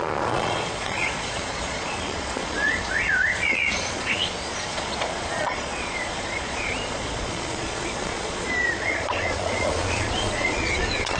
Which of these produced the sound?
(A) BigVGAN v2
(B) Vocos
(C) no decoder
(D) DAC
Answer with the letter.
B